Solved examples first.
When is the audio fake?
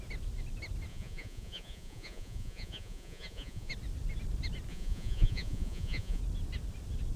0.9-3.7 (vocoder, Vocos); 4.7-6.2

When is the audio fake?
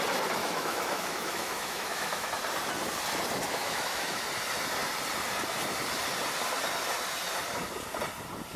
0.4-2.3 (autoencoder, DAC-VAE); 3.6-4.2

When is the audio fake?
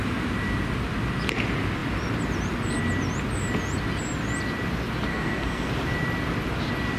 5.1-5.7 (codec, SNAC)